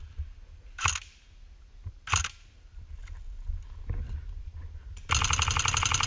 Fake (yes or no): no